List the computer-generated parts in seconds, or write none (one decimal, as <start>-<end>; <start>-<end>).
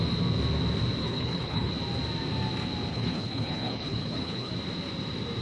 1.0-1.7; 2.9-4.5